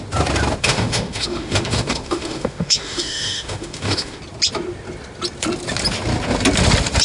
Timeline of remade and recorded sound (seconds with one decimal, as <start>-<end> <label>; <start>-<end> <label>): 0.0-0.6 recorded; 0.6-4.2 remade; 4.2-7.0 recorded